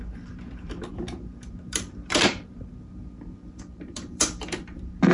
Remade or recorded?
remade